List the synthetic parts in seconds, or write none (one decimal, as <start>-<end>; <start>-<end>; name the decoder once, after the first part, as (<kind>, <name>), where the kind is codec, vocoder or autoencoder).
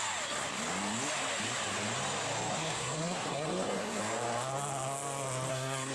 2.5-4.0 (codec, SNAC); 5.5-5.9